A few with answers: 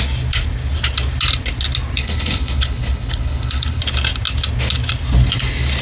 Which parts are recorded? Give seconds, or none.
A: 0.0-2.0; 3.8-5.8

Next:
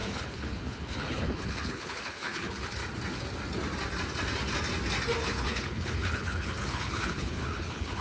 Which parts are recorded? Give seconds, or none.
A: 2.8-5.2

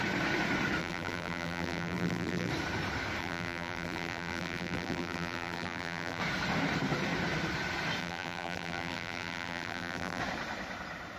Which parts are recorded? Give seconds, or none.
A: 0.0-0.8; 2.5-3.2; 6.2-8.0; 10.2-11.2

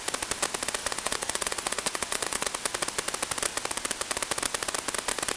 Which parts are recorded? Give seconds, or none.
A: 0.0-0.8; 2.5-5.4